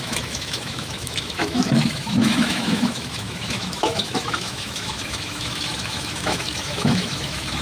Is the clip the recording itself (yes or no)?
no